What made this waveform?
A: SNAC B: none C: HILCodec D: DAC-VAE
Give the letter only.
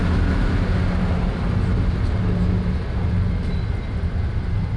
B